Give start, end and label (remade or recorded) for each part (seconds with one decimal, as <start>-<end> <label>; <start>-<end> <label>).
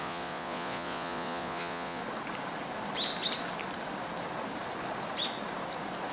0.0-2.0 remade; 2.0-6.1 recorded